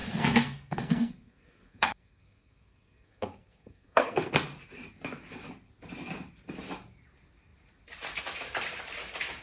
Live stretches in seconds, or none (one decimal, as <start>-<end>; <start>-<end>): 4.3-9.4